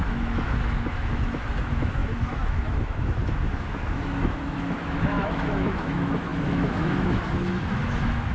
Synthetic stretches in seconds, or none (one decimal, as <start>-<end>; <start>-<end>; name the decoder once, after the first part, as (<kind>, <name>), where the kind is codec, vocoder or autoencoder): 0.0-8.3 (autoencoder, DAC-VAE)